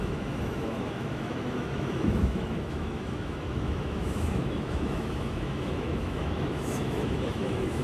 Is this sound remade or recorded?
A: remade